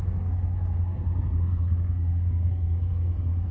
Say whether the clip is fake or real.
fake